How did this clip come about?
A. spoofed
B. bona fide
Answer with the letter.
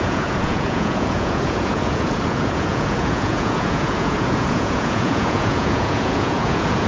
A